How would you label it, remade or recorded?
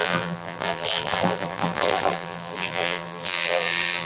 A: remade